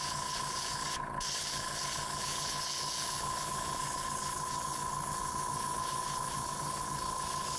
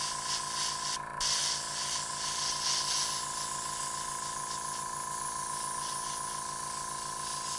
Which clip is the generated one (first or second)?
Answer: first